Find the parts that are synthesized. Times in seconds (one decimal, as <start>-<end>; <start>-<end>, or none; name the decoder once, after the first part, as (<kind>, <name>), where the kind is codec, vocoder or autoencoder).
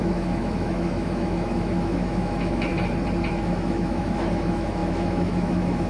0.0-2.7 (autoencoder, DAC-VAE); 3.3-5.9